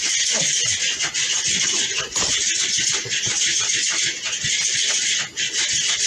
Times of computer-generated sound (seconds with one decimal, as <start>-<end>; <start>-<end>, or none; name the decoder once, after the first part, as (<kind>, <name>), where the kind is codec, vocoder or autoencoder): 1.5-3.7 (vocoder, BigVGAN v2)